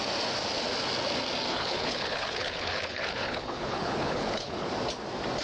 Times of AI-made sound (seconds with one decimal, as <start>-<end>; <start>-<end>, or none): 1.5-4.7